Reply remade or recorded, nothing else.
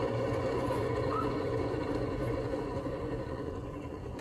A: remade